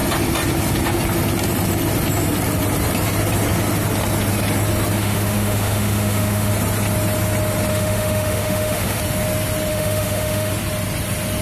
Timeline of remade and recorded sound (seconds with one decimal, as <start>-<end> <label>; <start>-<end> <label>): 0.0-5.0 recorded; 5.0-6.5 remade; 6.5-7.7 recorded; 7.7-9.0 remade; 9.0-9.7 recorded; 9.7-10.5 remade; 10.5-11.4 recorded